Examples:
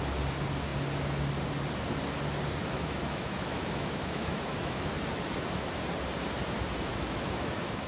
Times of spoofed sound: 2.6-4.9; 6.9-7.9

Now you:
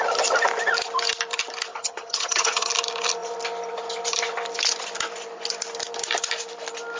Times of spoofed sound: 1.7-2.7